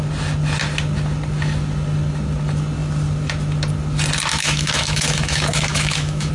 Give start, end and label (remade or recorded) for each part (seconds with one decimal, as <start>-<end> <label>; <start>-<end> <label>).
0.0-4.3 recorded; 4.3-6.3 remade